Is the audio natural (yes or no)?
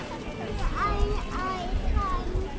yes